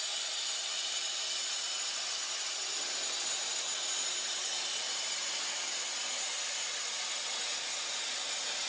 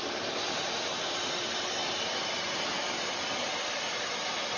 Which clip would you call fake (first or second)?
second